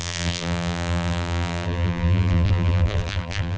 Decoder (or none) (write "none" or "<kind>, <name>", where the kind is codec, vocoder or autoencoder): vocoder, BigVGAN v2